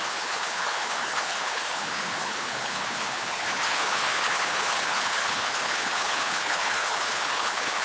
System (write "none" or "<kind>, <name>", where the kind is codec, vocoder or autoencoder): codec, HILCodec